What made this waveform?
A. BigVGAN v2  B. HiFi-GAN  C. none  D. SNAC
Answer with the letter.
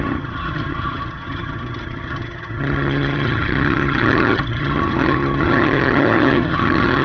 B